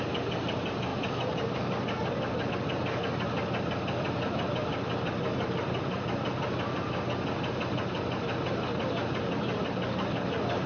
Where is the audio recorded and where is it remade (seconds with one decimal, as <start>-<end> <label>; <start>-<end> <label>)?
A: 0.0-10.7 recorded